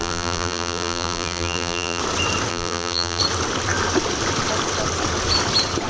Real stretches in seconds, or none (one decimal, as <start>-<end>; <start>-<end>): 2.0-2.5; 3.2-5.9